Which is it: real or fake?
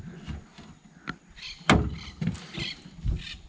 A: real